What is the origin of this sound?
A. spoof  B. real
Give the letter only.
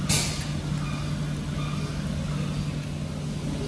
B